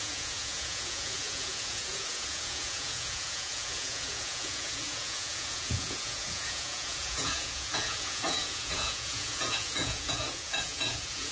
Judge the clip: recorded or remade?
remade